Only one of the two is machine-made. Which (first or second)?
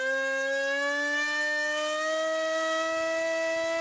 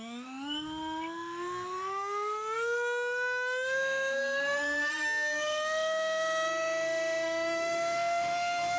second